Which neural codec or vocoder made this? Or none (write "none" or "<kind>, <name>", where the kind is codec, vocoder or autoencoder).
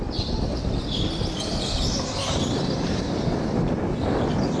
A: none